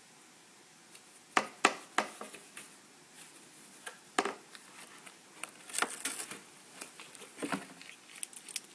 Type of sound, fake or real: real